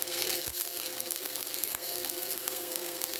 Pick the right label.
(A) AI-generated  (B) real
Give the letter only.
A